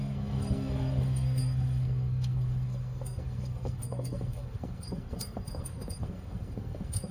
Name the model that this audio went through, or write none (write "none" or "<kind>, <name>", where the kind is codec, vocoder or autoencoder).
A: codec, SNAC